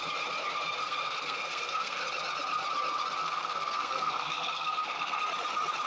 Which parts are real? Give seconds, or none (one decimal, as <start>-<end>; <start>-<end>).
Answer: 0.0-0.8; 2.0-3.2; 5.2-5.9